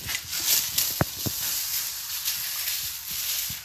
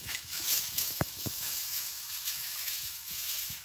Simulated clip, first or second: second